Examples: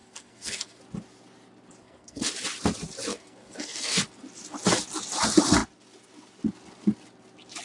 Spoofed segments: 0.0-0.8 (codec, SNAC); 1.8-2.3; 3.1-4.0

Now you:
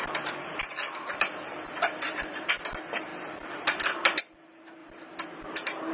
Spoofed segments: 0.0-2.5 (vocoder, BigVGAN v2); 3.1-4.2; 4.8-5.9